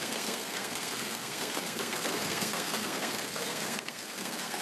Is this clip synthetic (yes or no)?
yes